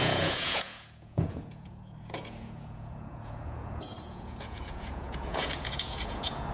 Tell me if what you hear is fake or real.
fake